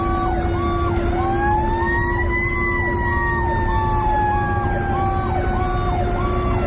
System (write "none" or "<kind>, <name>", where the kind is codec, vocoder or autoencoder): none